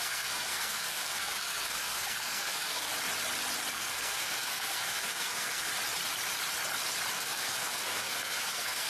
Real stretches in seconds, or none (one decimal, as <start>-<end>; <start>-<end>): 2.9-3.7; 5.7-7.1